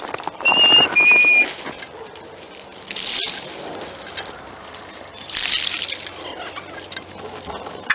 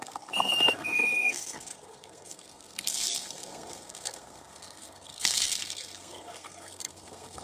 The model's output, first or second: second